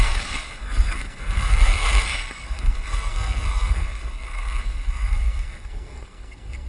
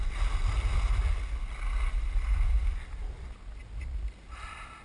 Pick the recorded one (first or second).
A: second